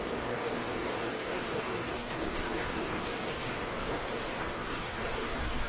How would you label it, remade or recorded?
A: remade